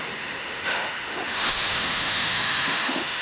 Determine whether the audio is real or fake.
fake